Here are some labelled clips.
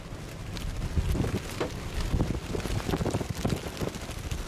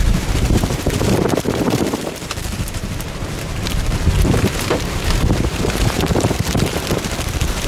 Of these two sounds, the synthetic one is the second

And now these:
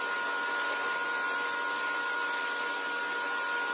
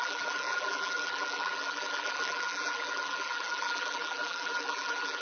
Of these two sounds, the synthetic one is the second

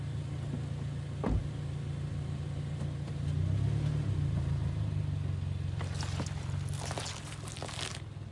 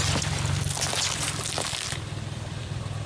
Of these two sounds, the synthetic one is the second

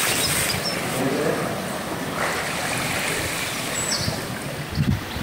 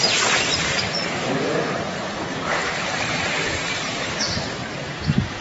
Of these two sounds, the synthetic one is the second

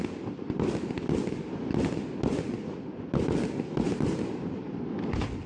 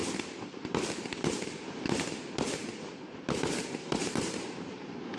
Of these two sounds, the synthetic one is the second